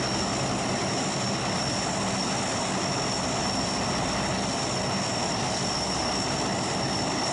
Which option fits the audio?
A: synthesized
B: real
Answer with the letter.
B